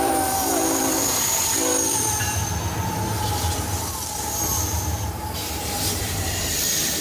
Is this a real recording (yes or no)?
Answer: no